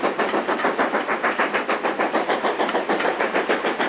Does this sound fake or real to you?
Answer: fake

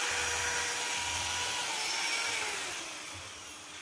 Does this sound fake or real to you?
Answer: real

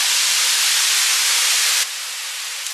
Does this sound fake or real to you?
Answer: real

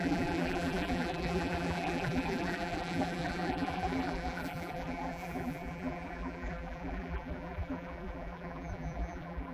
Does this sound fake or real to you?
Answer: fake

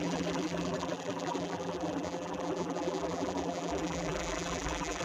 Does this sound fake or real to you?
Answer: fake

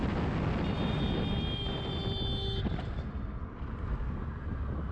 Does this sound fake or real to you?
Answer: real